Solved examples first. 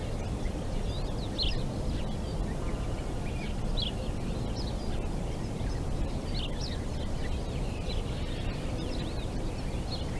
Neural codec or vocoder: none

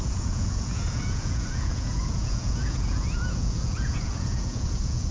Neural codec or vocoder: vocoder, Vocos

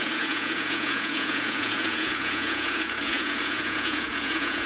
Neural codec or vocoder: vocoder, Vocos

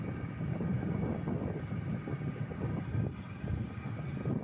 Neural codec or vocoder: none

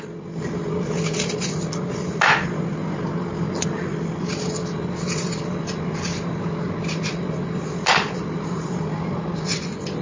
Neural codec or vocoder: none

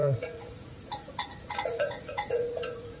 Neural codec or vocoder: vocoder, Vocos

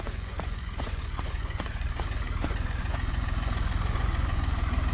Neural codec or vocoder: vocoder, Vocos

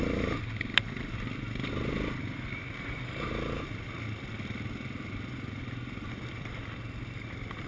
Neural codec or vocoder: none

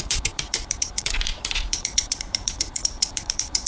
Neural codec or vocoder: vocoder, Vocos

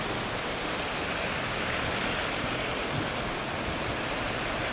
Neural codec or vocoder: none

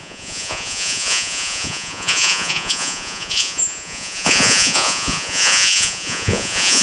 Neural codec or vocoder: vocoder, Vocos